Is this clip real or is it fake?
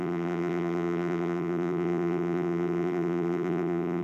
fake